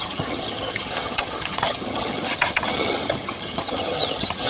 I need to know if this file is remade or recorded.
remade